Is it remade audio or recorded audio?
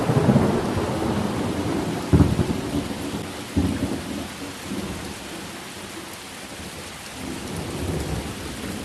recorded